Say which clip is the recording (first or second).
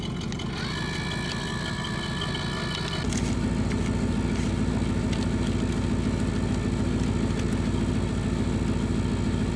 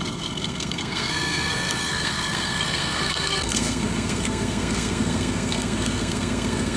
first